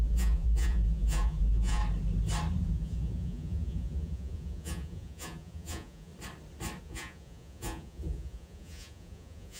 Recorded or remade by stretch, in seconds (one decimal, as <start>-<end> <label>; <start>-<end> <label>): 0.0-1.8 remade; 1.8-2.7 recorded; 2.7-6.1 remade; 6.1-6.8 recorded; 6.8-9.6 remade